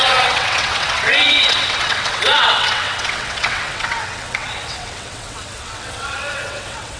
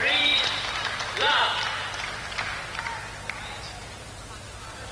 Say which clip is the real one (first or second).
second